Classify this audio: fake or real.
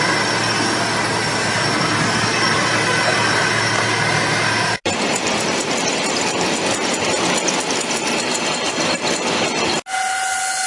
real